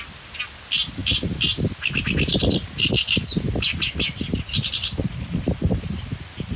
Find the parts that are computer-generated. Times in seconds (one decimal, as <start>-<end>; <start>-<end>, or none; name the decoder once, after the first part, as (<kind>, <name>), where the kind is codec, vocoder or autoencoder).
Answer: none